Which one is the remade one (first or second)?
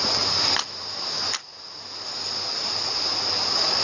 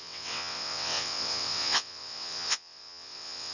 second